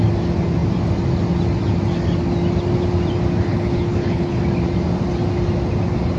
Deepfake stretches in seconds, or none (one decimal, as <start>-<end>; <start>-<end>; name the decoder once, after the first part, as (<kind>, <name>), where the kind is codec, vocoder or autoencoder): 3.5-4.4 (codec, HILCodec)